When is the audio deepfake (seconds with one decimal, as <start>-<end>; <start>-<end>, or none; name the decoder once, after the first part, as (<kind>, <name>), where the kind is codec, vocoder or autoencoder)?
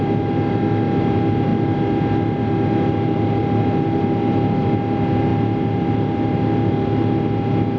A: none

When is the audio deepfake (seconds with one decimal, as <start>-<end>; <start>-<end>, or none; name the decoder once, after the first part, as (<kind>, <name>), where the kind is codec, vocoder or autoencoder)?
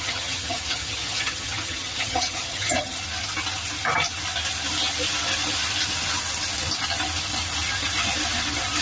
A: 0.0-3.0 (vocoder, HiFi-GAN)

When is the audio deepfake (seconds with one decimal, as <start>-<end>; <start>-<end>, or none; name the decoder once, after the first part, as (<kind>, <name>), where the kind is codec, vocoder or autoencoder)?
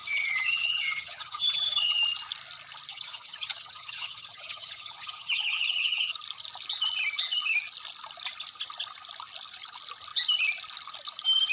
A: 0.0-2.0 (vocoder, HiFi-GAN); 2.9-6.2